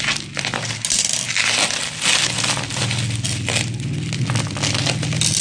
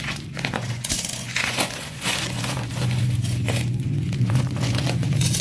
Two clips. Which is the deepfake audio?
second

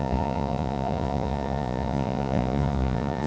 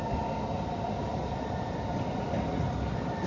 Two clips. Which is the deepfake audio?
first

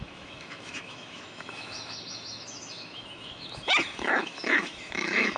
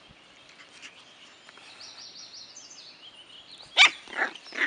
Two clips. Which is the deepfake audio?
first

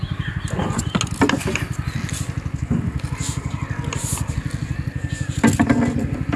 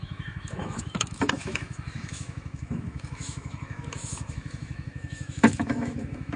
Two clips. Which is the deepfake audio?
second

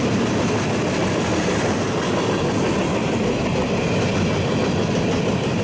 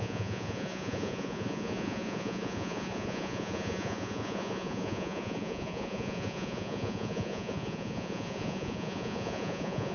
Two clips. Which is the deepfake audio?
second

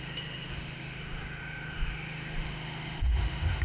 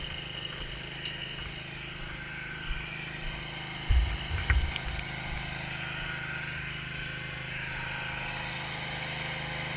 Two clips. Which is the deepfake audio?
first